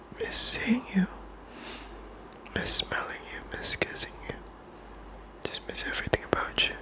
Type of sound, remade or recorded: recorded